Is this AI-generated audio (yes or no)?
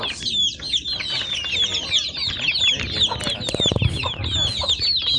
no